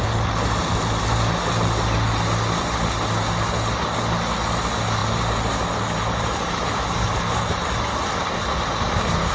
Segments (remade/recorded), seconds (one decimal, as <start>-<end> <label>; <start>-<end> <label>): 0.0-9.3 recorded

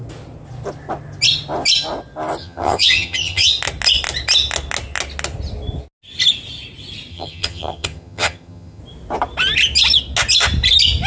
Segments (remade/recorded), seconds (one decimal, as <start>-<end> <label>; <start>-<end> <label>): 0.0-2.4 recorded; 2.4-3.5 remade; 3.5-7.1 recorded; 7.1-8.8 remade; 8.8-11.1 recorded

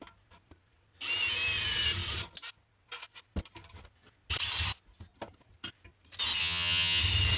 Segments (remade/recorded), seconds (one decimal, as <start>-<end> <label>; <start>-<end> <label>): 0.0-6.4 recorded; 6.4-7.0 remade; 7.0-7.4 recorded

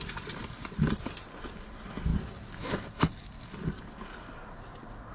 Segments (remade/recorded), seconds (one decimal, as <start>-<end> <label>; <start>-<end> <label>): 0.0-5.1 recorded

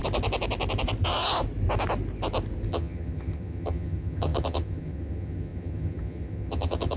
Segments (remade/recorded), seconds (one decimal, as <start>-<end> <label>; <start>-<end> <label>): 0.0-2.7 recorded; 2.7-7.0 remade

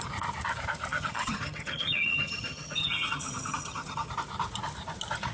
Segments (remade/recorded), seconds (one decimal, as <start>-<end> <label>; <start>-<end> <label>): 0.0-0.9 recorded; 0.9-4.1 remade; 4.1-5.3 recorded